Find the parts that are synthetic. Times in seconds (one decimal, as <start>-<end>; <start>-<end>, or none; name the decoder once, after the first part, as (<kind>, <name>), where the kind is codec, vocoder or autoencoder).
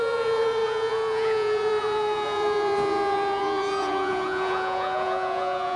0.0-5.8 (vocoder, Vocos)